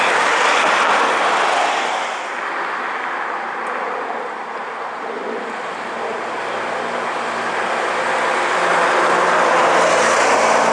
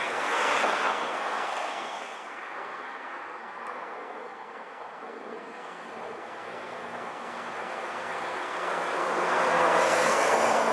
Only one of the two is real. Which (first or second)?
first